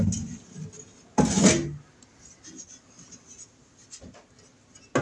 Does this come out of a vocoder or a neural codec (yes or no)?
no